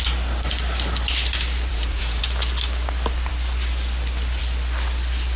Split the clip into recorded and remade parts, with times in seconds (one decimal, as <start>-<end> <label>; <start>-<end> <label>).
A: 0.0-1.7 recorded; 1.7-2.2 remade; 2.2-5.4 recorded